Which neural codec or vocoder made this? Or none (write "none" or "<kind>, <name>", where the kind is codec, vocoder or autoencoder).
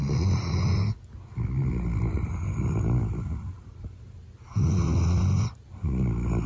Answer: none